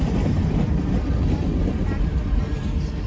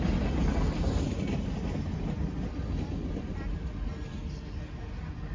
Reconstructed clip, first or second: first